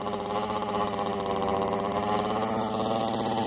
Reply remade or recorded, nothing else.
recorded